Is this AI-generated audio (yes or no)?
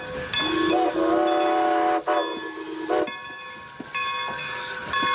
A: no